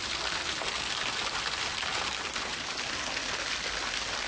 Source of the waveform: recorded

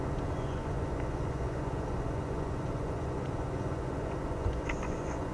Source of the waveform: remade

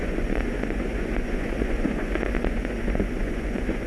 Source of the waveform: remade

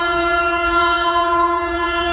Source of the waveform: remade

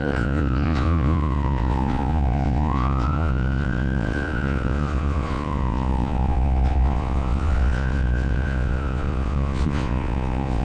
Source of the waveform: remade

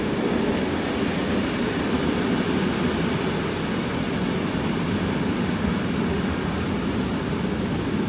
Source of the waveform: recorded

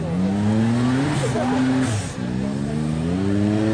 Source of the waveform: recorded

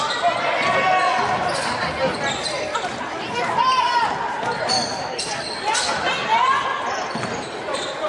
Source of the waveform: recorded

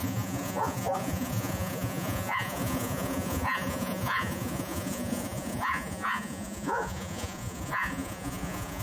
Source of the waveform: remade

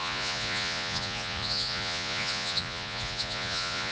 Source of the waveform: remade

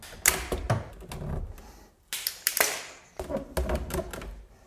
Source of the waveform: recorded